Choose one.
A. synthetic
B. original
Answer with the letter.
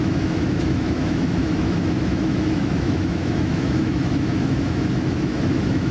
A